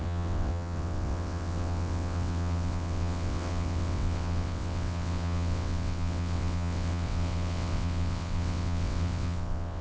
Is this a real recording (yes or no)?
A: no